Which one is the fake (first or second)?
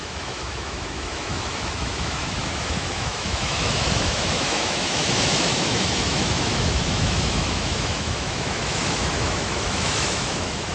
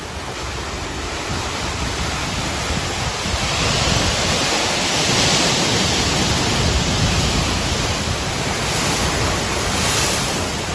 first